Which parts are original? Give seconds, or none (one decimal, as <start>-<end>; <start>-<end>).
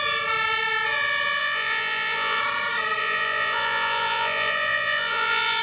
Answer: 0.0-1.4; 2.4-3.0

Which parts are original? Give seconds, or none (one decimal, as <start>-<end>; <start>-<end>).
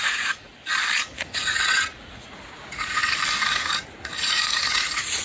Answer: 0.5-1.0; 3.0-3.5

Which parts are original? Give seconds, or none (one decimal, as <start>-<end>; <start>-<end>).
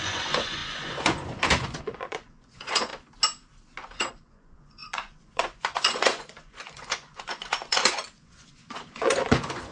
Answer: 2.9-4.1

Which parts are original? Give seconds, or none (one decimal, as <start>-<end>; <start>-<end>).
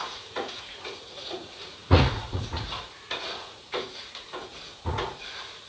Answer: none